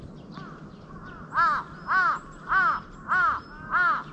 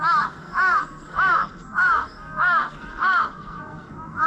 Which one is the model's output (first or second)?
second